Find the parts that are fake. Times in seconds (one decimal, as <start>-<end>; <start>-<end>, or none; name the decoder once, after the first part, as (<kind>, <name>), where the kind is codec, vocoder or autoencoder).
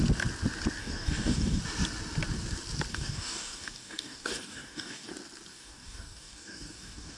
0.8-1.6 (codec, DAC); 2.9-5.1; 5.5-7.2